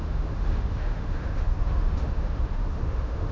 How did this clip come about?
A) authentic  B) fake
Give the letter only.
B